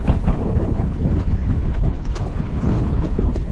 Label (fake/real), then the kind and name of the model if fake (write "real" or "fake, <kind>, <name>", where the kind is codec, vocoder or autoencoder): fake, codec, HILCodec